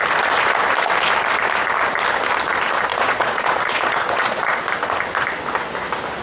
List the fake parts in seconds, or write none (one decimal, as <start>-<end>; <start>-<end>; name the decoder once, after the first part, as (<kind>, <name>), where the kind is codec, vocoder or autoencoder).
2.9-4.7 (vocoder, Vocos)